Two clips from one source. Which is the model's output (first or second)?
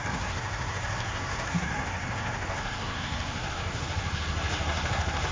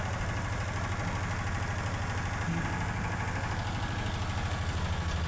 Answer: first